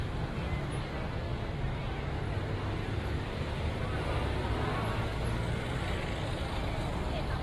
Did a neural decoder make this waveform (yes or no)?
no